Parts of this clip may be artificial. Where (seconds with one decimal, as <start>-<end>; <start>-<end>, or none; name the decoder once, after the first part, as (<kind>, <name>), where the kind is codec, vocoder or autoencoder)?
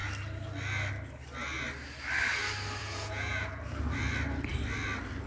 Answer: 2.8-3.6 (vocoder, Vocos)